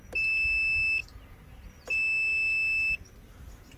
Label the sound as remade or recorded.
recorded